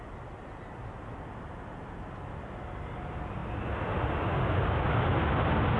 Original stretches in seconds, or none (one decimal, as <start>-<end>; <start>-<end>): 0.0-5.8